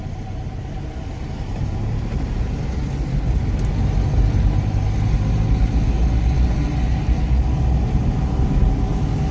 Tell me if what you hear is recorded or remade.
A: recorded